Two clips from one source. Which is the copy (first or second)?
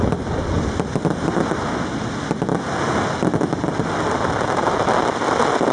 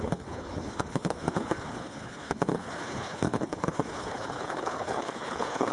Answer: second